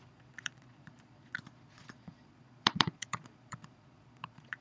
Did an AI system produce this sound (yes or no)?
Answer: yes